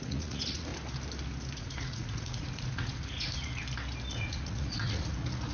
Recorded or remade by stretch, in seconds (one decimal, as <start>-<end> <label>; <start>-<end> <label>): 0.0-0.7 remade; 0.7-1.6 recorded; 1.6-3.6 remade; 3.6-4.1 recorded; 4.1-5.5 remade